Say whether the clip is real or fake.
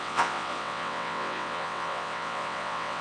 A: fake